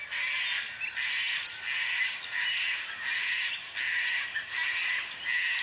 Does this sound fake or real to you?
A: real